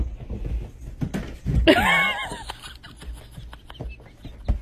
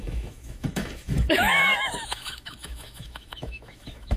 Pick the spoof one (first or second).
second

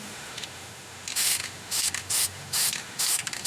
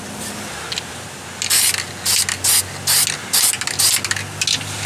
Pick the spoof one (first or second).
first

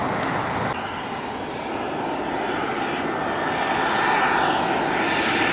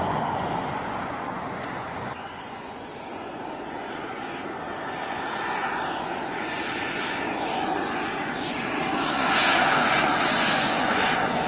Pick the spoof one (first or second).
second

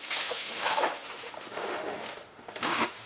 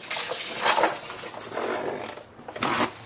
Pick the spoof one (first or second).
first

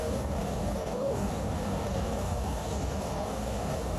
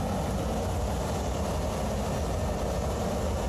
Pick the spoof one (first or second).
first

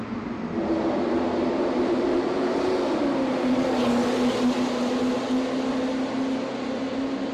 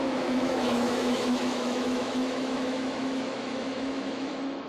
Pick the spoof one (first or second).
second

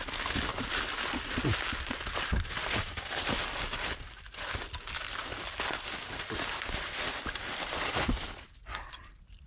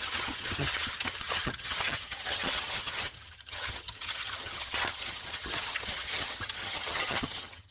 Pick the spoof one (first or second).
second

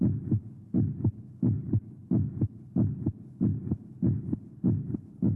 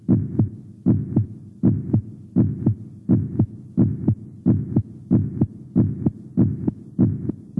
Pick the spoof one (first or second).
first